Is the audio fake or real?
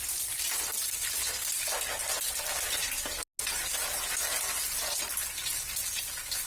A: real